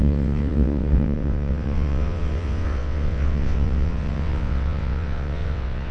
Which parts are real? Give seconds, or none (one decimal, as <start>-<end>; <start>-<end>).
none